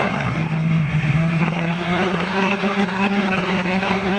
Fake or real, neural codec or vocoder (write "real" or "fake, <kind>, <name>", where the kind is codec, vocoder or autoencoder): fake, codec, SNAC